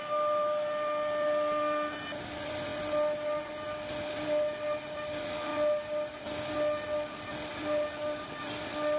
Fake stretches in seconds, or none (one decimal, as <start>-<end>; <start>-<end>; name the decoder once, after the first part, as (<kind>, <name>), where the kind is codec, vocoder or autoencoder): none